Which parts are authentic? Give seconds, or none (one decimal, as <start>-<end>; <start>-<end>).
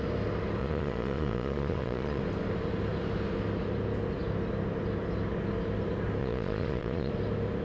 0.0-0.6; 2.2-6.2; 7.1-7.6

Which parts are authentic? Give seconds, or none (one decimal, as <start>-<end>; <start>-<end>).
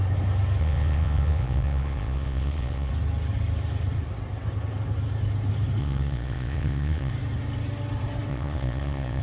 0.0-0.6; 2.9-5.8; 7.1-8.3